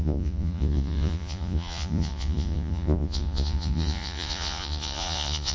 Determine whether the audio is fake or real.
fake